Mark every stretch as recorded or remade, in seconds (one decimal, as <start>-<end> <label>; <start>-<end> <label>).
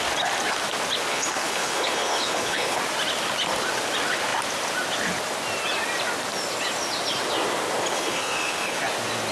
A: 0.0-1.1 recorded; 1.1-2.8 remade; 2.8-7.9 recorded; 7.9-8.8 remade; 8.8-9.3 recorded